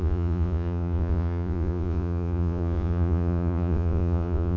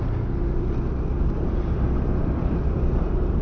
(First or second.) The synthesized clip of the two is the first